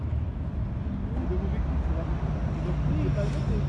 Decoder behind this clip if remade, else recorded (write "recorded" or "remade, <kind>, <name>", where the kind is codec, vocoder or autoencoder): recorded